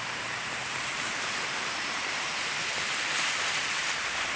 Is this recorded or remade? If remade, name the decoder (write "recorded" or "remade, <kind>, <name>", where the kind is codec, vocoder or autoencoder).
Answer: remade, vocoder, BigVGAN v2